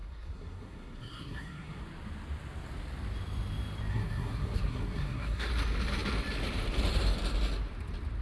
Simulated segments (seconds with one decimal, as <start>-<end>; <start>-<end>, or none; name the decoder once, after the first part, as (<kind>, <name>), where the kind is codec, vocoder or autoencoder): 0.0-1.8 (codec, SNAC); 3.9-5.5